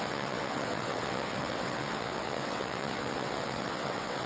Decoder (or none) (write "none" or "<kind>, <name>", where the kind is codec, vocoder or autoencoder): vocoder, WaveNeXt